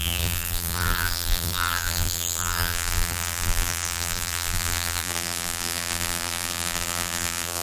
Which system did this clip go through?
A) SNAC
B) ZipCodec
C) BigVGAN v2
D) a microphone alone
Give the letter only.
C